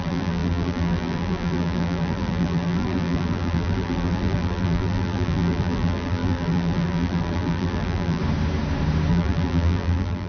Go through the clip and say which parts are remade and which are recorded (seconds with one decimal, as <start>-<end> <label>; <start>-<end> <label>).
0.0-8.2 remade; 8.2-9.1 recorded; 9.1-10.3 remade